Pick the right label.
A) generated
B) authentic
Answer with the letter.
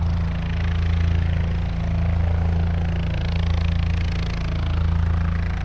B